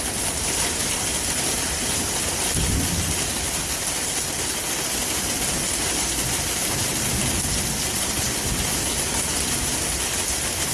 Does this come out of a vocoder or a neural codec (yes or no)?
no